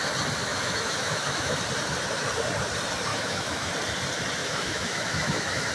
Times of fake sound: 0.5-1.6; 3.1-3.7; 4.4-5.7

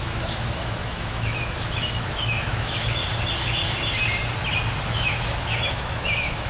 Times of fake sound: 0.0-3.0; 4.9-6.5

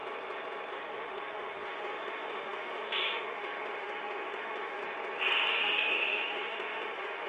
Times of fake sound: 0.7-4.8; 5.5-7.3

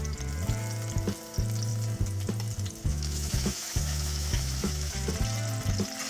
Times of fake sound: 2.9-5.1

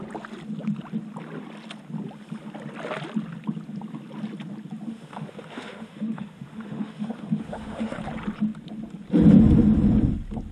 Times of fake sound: 4.9-8.0

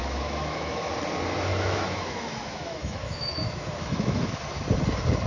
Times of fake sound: 0.0-0.9; 1.5-4.3

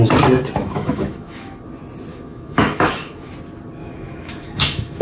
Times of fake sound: 0.6-1.6; 2.1-3.3; 3.8-5.0